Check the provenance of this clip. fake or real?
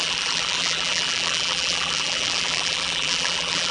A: fake